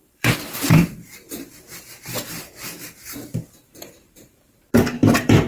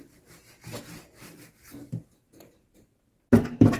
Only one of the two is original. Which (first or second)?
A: second